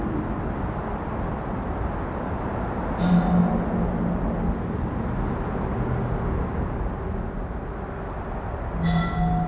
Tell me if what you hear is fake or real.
real